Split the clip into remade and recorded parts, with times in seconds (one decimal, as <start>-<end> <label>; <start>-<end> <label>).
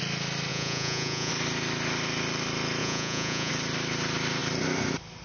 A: 0.0-0.5 recorded; 0.5-1.3 remade; 1.3-2.8 recorded; 2.8-3.5 remade; 3.5-5.2 recorded